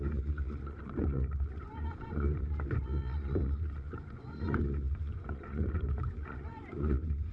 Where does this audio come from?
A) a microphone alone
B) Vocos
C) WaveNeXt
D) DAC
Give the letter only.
B